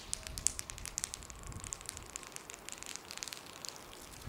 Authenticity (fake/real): real